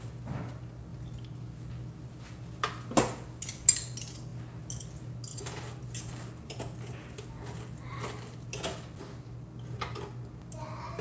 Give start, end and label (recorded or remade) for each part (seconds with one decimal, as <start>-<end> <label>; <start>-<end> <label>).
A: 0.0-11.0 recorded